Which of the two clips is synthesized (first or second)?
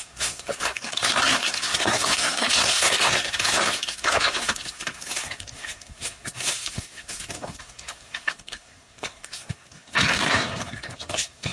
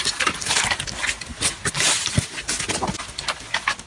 first